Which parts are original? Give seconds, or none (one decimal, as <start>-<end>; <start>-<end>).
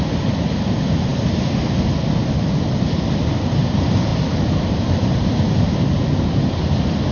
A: 0.0-4.1; 6.2-7.1